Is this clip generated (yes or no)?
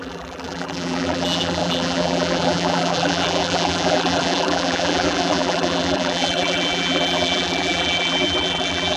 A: yes